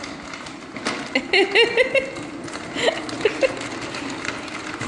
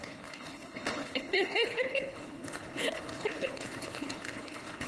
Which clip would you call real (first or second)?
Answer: first